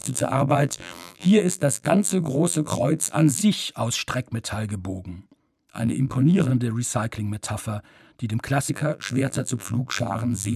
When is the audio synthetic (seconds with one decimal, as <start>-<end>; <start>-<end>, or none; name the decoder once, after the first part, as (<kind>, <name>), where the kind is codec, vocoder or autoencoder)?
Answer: 0.0-3.4 (vocoder, BigVGAN v2); 5.7-6.5; 8.7-10.6